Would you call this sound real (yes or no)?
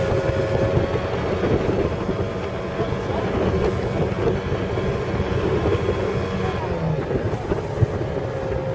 yes